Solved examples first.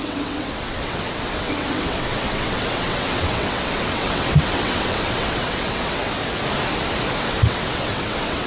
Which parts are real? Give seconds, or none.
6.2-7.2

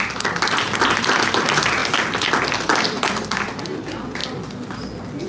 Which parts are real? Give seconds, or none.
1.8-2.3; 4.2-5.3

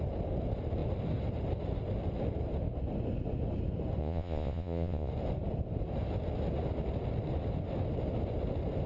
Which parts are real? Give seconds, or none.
0.0-4.0; 5.1-8.9

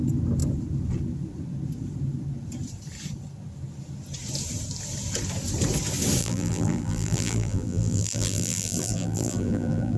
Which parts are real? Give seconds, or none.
0.0-6.2

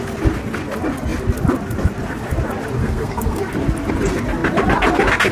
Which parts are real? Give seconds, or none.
0.0-2.8; 3.4-5.3